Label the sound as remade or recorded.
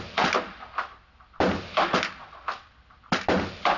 recorded